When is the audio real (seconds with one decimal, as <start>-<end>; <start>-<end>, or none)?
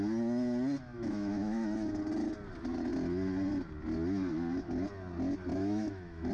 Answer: 0.0-0.9; 2.0-5.5